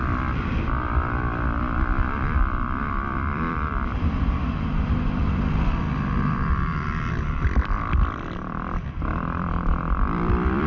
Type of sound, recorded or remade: remade